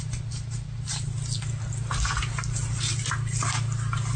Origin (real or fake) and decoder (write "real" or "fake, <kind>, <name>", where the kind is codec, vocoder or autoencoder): real